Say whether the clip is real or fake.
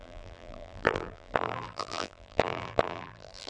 fake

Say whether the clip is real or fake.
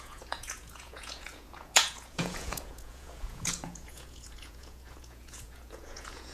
fake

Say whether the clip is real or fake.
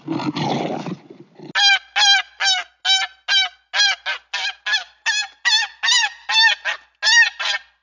real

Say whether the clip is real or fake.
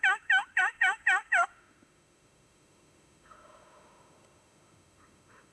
fake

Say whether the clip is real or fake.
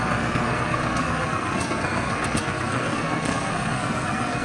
fake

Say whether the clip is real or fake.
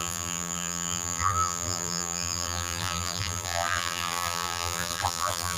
fake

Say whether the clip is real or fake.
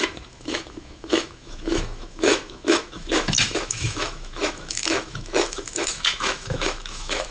fake